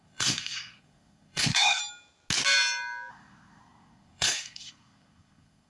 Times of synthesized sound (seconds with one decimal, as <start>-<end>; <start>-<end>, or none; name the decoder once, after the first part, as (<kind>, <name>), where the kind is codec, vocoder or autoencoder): 0.0-1.8 (codec, SNAC); 3.1-5.7